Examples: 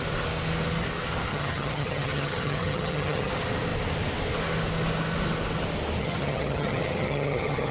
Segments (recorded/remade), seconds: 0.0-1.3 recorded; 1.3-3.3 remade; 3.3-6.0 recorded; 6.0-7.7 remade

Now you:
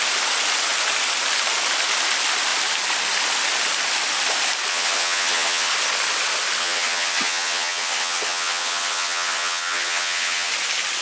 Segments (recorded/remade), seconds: 0.0-4.7 recorded; 4.7-5.7 remade; 5.7-6.6 recorded; 6.6-10.5 remade; 10.5-11.0 recorded